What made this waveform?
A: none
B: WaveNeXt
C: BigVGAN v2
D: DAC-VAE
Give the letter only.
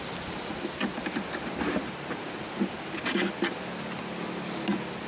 A